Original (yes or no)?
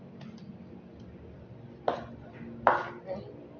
yes